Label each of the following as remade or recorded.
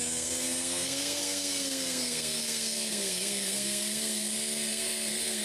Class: remade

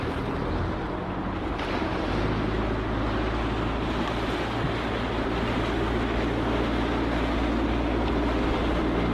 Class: recorded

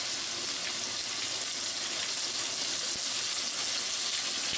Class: recorded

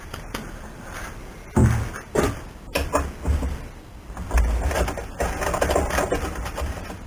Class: recorded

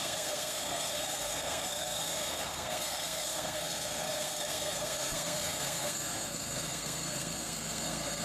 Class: remade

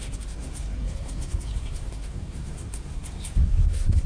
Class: remade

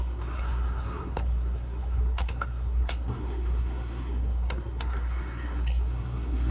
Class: remade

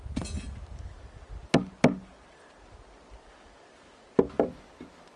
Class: recorded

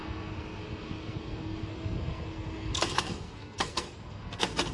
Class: remade